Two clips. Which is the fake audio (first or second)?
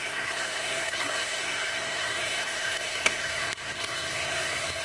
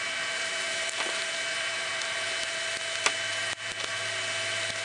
first